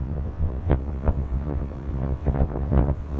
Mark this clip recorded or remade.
remade